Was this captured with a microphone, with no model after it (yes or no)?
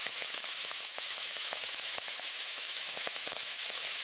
no